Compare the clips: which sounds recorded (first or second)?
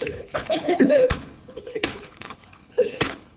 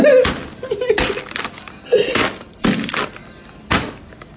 second